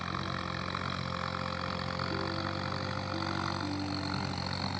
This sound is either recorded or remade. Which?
recorded